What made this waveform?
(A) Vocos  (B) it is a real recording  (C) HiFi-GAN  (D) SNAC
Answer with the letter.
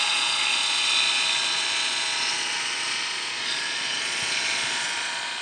A